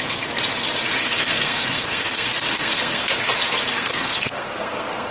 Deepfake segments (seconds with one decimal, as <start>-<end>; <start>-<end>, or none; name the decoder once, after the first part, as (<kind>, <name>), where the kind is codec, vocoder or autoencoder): 1.0-3.1 (codec, SNAC); 3.7-5.1